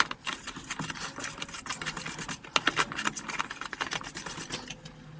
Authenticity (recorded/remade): recorded